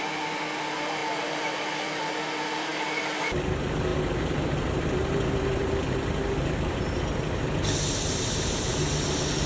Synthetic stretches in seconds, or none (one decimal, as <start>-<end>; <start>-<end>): none